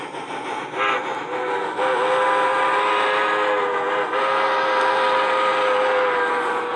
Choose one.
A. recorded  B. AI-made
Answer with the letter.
A